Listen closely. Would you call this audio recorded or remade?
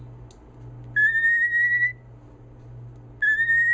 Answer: recorded